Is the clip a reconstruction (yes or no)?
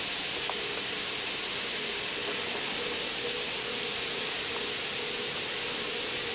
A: yes